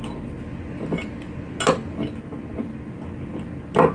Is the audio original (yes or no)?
yes